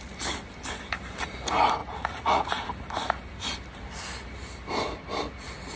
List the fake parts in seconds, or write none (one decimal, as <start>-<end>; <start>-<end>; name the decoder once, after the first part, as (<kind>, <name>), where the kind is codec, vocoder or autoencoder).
1.8-2.5 (vocoder, Vocos)